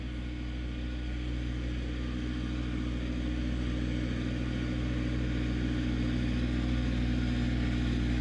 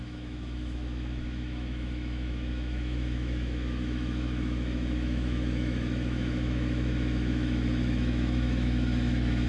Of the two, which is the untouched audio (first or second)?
first